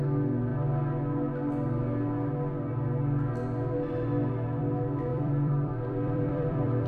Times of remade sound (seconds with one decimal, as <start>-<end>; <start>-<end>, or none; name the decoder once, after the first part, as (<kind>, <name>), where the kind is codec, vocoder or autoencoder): 5.1-6.9 (vocoder, BigVGAN v2)

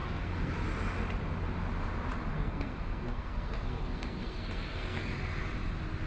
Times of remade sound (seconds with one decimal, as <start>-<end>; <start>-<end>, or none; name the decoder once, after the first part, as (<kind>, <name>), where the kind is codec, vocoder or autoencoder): 0.0-0.5 (codec, SNAC); 2.3-5.1

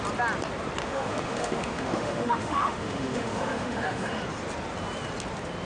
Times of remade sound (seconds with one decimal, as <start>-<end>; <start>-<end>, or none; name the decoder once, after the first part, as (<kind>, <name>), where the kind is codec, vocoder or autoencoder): 0.8-4.2 (autoencoder, DAC-VAE)

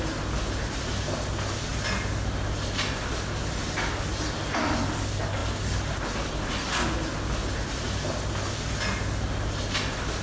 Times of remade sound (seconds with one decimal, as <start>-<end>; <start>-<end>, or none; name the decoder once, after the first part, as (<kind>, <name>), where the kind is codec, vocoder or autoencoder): none